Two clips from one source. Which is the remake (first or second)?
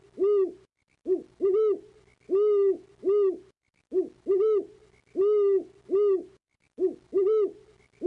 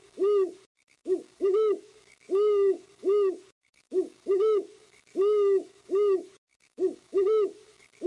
second